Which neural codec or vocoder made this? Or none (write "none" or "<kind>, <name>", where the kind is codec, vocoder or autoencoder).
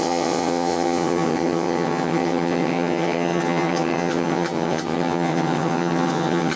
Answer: vocoder, HiFi-GAN